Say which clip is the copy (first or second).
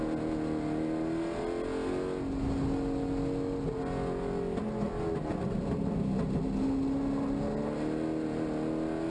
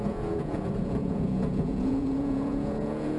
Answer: second